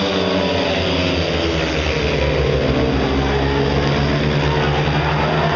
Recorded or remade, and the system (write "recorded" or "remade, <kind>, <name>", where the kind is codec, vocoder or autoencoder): recorded